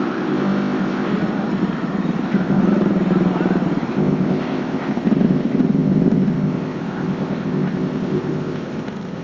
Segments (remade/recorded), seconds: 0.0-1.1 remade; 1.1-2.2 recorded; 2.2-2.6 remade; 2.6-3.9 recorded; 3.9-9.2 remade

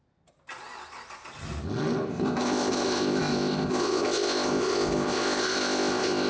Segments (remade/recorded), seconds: 0.0-2.1 recorded; 2.1-6.3 remade

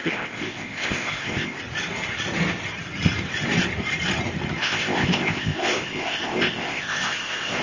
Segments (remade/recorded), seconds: 0.0-1.6 remade; 1.6-4.6 recorded; 4.6-7.6 remade

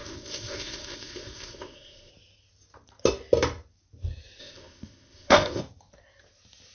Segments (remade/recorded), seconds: 0.0-2.1 remade; 2.1-4.4 recorded; 4.4-5.6 remade; 5.6-6.7 recorded

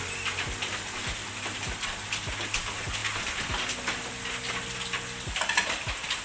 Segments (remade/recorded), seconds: 0.0-6.2 recorded

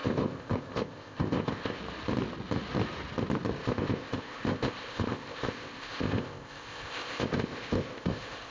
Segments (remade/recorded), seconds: 0.0-1.8 remade; 1.8-3.6 recorded; 3.6-8.5 remade

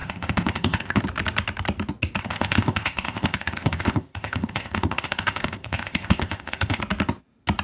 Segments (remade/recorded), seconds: 0.0-1.0 remade; 1.0-2.2 recorded; 2.2-6.8 remade; 6.8-7.6 recorded